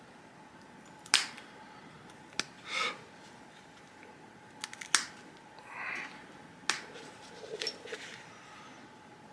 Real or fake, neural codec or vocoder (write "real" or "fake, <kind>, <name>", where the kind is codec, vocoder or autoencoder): real